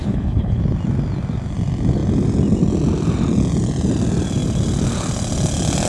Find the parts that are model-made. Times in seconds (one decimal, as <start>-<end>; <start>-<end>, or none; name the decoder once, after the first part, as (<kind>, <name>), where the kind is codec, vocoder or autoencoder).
0.0-0.6 (codec, HILCodec)